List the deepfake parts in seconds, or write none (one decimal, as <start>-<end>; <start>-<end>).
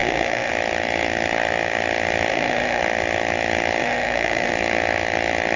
0.0-0.5; 2.3-2.8; 3.8-4.5